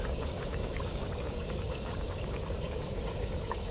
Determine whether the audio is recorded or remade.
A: remade